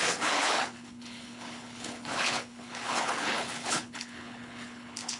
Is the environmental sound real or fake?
fake